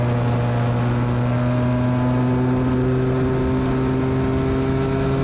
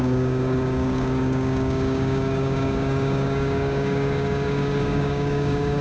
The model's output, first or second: second